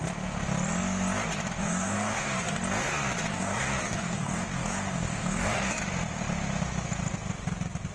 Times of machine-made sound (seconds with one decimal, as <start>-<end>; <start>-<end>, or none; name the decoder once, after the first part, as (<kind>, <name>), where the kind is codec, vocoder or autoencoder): 1.6-2.6 (codec, DAC); 3.3-5.8